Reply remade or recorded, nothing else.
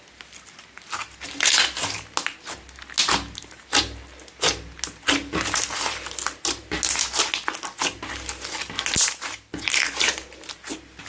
recorded